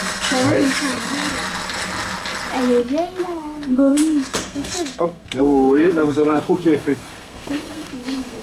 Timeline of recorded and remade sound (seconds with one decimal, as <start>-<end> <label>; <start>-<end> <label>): 0.0-1.3 remade; 1.3-3.2 recorded; 3.2-8.4 remade